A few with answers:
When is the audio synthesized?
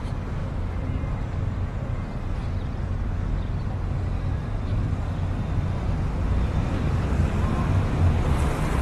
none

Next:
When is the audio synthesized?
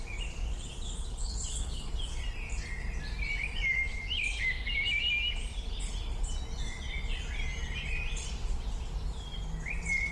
1.1-1.9 (codec, HILCodec)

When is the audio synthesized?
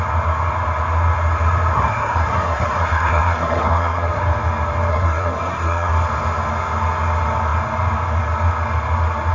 1.7-4.2 (codec, SNAC); 4.9-5.9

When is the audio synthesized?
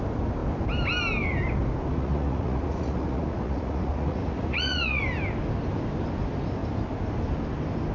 1.9-5.0 (vocoder, Vocos)